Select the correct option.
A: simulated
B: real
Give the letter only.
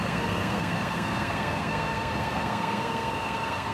A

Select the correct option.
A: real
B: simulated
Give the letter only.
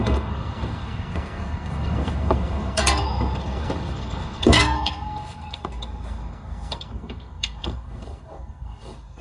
B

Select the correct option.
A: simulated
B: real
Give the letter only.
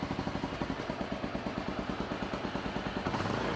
B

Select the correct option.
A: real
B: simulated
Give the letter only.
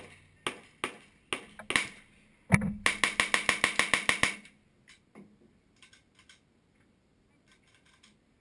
A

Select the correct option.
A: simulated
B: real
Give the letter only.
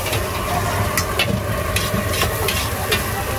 B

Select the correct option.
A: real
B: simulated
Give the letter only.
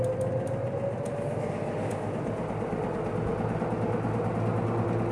A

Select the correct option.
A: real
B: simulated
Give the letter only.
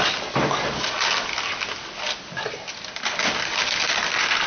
A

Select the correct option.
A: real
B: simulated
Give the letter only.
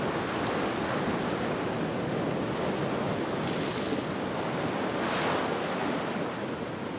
A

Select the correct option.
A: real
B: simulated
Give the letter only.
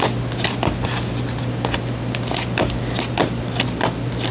A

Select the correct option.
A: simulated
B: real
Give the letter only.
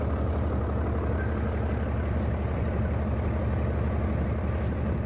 B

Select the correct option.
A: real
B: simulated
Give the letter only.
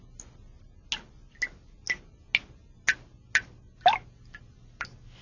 A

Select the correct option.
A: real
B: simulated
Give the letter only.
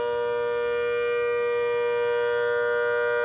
A